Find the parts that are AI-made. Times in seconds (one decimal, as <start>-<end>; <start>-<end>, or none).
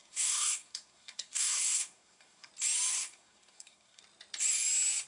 0.0-2.5; 2.9-4.0